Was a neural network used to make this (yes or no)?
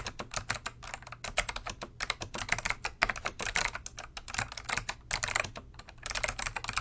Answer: no